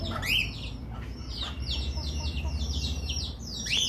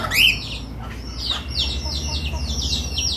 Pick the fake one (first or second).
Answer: first